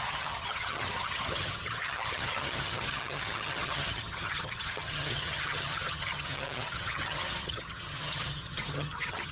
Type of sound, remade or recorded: remade